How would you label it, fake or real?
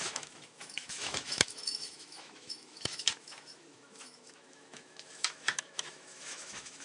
fake